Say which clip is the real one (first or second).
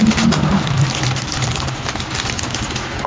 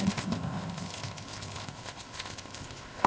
first